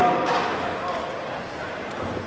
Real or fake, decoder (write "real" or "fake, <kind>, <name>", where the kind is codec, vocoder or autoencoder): real